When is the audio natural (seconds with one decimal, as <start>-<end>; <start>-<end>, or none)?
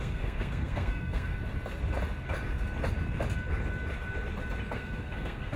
1.3-4.7